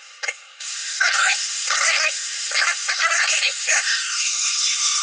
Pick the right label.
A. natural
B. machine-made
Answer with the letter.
B